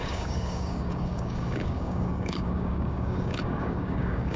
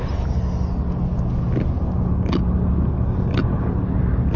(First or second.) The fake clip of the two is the first